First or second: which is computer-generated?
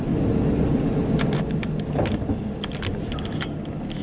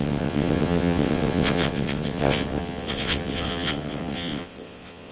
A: second